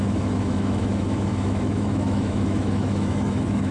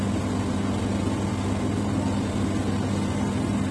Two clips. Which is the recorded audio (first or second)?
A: second